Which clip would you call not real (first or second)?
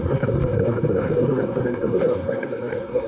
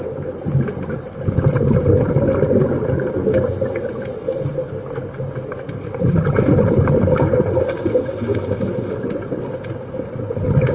first